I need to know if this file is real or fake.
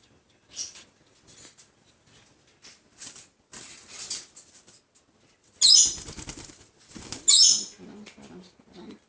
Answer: real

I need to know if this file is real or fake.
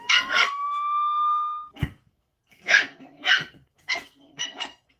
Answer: fake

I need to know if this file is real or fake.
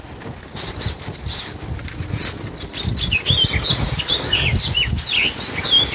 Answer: real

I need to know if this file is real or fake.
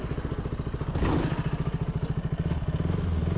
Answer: real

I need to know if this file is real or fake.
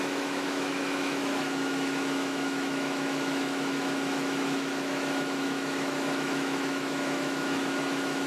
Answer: fake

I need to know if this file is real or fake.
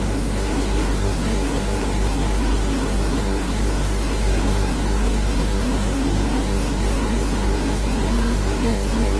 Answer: fake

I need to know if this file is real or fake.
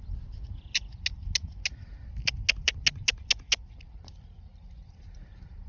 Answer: real